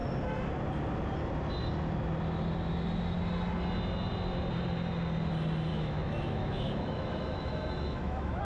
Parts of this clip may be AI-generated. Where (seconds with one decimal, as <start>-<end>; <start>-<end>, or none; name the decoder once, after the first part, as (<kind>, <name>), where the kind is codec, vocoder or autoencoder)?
5.7-8.4 (autoencoder, DAC-VAE)